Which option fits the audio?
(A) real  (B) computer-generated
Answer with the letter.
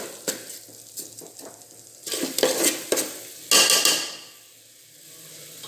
A